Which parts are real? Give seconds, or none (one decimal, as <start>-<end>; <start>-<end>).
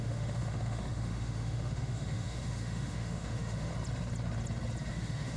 3.7-4.9